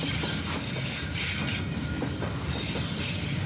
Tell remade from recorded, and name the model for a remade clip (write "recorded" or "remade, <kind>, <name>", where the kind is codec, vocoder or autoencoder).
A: recorded